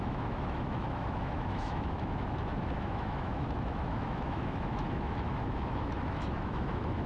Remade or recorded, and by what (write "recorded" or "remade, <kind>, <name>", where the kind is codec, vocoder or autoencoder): remade, autoencoder, DAC-VAE